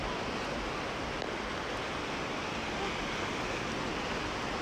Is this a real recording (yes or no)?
yes